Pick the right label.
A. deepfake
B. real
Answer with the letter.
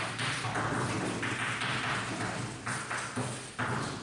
B